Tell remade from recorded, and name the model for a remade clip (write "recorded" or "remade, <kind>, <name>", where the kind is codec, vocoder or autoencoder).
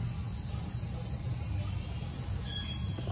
recorded